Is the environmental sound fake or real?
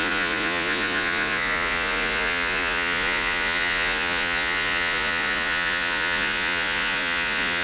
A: fake